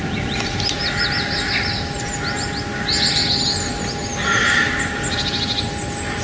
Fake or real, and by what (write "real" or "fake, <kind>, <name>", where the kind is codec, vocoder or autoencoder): real